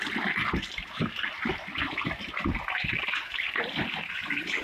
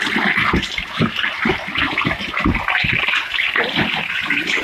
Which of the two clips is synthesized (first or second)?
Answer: first